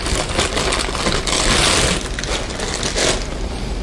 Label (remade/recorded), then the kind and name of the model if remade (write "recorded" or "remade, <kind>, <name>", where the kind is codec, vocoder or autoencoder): recorded